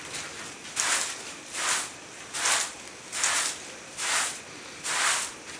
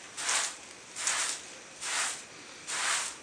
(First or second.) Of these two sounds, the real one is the second